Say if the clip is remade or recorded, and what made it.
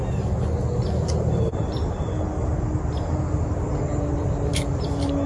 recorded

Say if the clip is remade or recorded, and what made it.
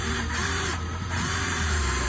remade, vocoder, BigVGAN v2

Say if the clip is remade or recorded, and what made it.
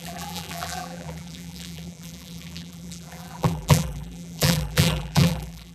remade, vocoder, BigVGAN v2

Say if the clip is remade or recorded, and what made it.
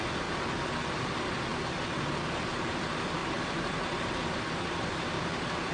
recorded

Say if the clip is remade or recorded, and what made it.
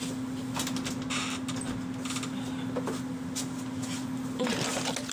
recorded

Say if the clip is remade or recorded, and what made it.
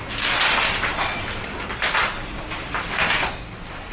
recorded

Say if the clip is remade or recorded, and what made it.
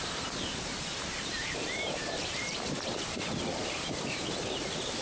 remade, vocoder, BigVGAN v2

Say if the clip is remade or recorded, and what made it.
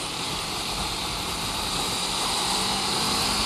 remade, vocoder, BigVGAN v2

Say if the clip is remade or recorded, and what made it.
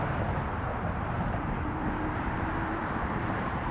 remade, vocoder, BigVGAN v2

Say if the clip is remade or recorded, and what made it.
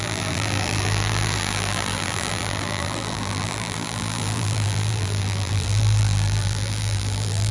remade, vocoder, BigVGAN v2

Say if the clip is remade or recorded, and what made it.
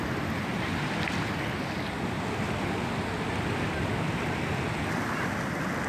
recorded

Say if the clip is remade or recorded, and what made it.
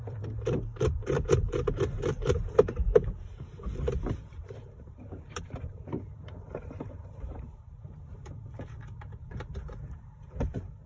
remade, vocoder, BigVGAN v2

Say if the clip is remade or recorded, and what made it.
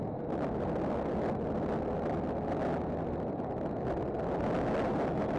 recorded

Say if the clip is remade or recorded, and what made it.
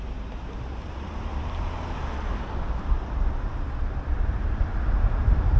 remade, vocoder, BigVGAN v2